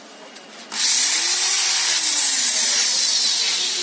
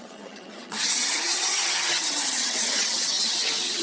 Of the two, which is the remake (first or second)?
second